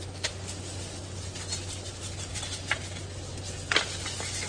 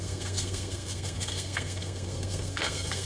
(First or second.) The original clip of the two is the first